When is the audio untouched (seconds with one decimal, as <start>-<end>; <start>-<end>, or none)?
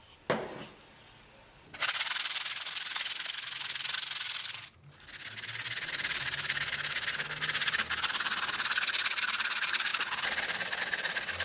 0.0-11.4